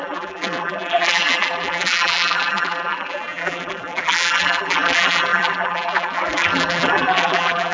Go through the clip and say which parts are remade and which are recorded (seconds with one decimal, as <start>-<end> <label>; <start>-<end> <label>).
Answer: 0.0-7.7 remade